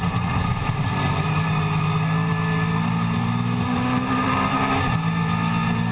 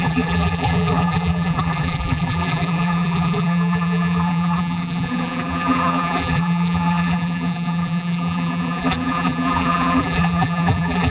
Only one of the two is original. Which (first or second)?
first